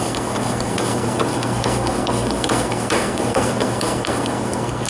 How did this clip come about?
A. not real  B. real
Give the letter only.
A